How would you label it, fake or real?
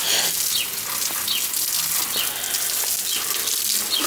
real